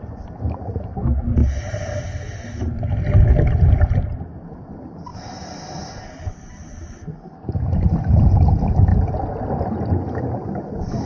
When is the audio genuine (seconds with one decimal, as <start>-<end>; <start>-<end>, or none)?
0.0-11.1